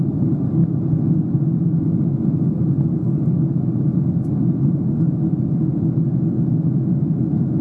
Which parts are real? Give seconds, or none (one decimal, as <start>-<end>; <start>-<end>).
0.0-7.6